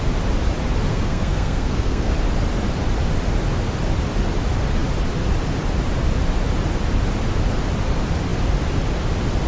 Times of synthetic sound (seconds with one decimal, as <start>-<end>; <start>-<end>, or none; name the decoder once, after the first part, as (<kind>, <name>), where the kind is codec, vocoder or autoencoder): 0.9-2.1 (codec, SNAC)